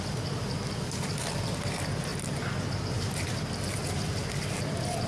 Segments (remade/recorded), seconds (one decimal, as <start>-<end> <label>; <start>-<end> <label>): 0.0-5.1 recorded

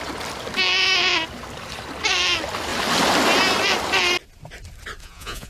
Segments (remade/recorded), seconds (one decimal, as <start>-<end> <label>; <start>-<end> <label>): 0.0-5.0 recorded; 5.0-5.5 remade

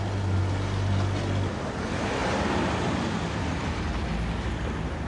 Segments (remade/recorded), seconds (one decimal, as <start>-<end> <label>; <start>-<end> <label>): 0.0-5.1 recorded

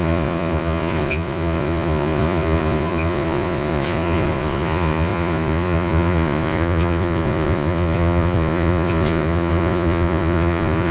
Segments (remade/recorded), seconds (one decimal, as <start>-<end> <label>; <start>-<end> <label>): 0.0-10.9 remade